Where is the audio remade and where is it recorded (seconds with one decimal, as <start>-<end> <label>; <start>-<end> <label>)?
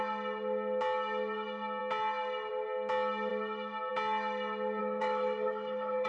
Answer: 0.0-4.8 recorded; 4.8-6.1 remade